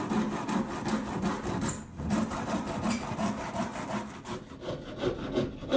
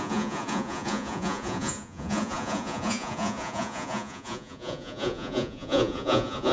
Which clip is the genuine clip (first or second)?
first